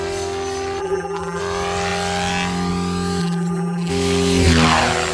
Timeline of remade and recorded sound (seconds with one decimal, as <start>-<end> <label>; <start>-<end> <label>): 0.0-0.8 recorded; 0.8-1.4 remade; 1.4-3.2 recorded; 3.2-3.9 remade; 3.9-5.1 recorded